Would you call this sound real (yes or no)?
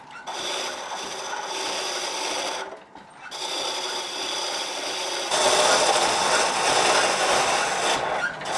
yes